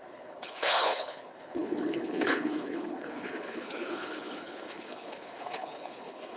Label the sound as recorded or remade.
remade